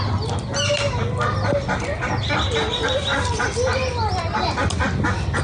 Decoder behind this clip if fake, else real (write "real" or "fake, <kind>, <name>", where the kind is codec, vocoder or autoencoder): real